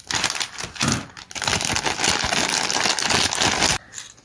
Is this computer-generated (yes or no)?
no